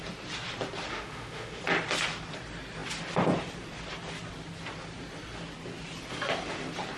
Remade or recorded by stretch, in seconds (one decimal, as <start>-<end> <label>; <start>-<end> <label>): 0.0-0.9 recorded; 0.9-1.6 remade; 1.6-7.0 recorded